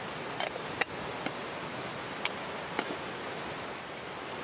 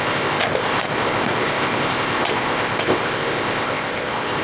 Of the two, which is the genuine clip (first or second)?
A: first